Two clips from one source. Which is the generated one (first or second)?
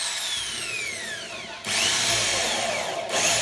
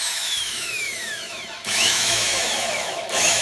second